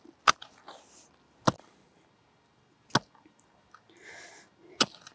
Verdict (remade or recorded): recorded